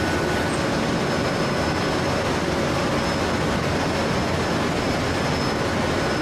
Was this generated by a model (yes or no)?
no